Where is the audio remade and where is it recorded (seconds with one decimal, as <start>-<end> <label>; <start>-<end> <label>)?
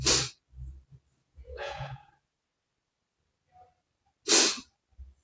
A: 0.0-1.2 recorded; 1.2-2.1 remade; 2.1-5.2 recorded